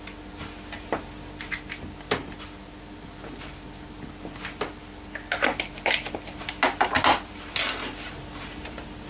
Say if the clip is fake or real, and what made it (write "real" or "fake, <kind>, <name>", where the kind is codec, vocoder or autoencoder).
real